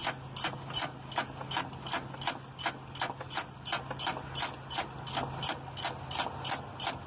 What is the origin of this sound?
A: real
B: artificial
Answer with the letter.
A